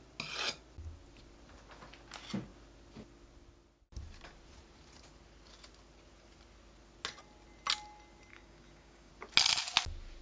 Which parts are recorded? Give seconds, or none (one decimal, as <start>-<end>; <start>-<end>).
0.0-8.3; 9.1-10.2